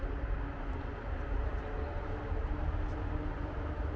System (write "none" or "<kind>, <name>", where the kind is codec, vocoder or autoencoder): none